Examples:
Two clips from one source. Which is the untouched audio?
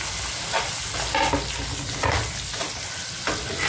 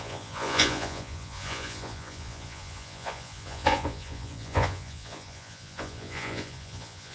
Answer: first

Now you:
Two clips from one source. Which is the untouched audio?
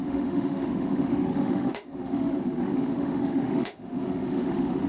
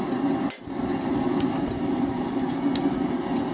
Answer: second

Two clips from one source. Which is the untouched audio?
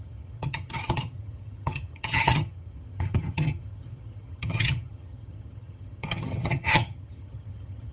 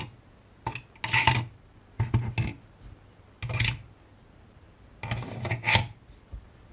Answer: second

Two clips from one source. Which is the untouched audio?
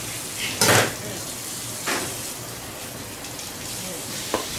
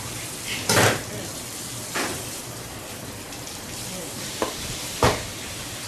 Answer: first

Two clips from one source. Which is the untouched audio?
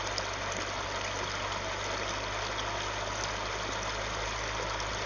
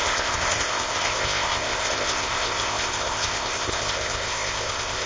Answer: first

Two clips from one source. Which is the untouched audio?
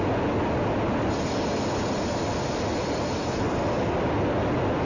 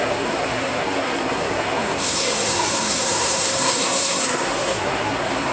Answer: first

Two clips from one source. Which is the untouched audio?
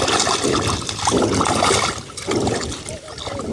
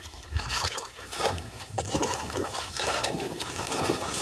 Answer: first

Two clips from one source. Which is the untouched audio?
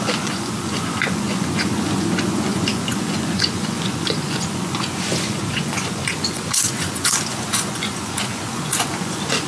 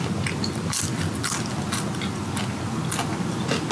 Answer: second